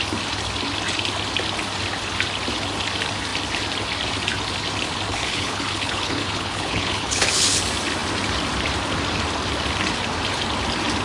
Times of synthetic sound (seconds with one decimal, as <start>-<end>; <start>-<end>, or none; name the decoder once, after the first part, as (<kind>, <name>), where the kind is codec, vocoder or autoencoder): 5.1-7.6 (codec, HILCodec)